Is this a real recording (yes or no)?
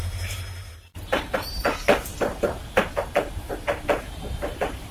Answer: no